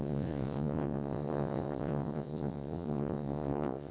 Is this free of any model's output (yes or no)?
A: no